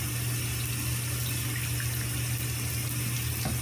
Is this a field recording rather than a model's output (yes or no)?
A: yes